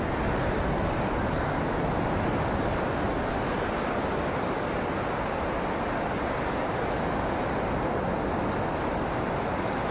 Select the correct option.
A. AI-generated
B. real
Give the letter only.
B